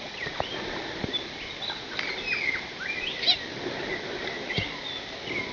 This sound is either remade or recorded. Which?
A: remade